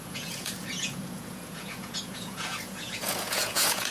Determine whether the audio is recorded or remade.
remade